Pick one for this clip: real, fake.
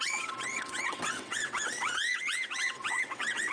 fake